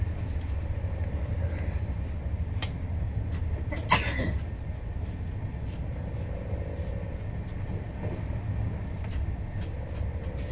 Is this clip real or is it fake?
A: real